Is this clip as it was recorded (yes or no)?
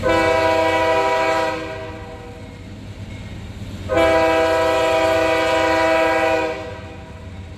yes